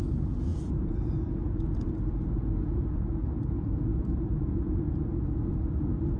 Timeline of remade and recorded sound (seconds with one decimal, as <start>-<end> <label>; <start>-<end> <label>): 0.0-6.2 remade